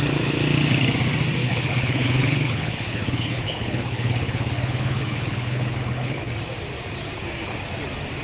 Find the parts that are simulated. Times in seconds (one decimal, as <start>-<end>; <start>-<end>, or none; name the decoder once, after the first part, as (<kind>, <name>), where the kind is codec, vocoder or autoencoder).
1.4-6.3 (codec, HILCodec)